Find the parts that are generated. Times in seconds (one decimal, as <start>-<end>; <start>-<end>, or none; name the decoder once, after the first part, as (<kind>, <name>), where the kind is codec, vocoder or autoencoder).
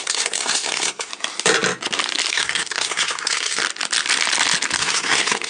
0.0-1.1 (codec, SNAC); 2.3-3.6; 4.8-5.5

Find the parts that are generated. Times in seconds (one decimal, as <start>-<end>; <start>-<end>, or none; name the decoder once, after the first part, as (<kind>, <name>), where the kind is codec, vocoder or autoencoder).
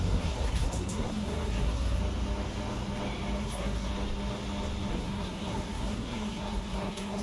0.0-2.0 (codec, SNAC); 3.4-3.9; 4.9-7.2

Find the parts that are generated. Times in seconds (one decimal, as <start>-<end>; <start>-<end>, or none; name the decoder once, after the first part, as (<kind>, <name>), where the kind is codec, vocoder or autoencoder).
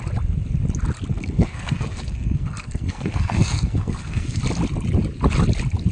1.1-4.4 (codec, SNAC)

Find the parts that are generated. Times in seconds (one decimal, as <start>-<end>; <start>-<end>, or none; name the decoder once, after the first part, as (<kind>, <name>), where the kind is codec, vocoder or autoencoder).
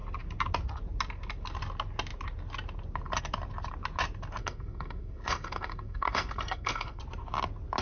4.4-7.0 (codec, SNAC)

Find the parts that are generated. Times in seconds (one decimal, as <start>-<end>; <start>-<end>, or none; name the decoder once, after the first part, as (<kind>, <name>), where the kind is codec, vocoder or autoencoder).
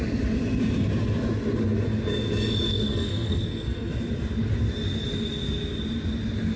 2.7-3.9 (codec, SNAC)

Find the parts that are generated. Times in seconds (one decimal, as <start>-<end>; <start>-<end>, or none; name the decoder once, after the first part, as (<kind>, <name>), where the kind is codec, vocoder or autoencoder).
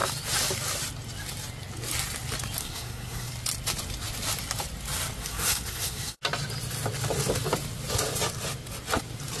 2.6-3.3 (codec, SNAC); 5.2-6.2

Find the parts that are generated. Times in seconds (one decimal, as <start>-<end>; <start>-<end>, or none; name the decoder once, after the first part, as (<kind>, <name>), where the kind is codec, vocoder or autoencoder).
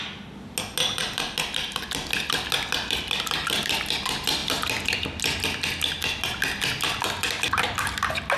none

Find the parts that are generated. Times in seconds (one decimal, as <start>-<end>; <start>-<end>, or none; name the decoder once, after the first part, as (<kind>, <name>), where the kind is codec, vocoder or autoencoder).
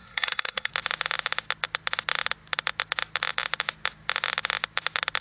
0.0-0.7 (codec, SNAC)